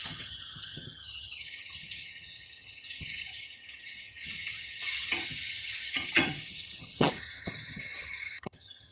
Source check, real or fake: fake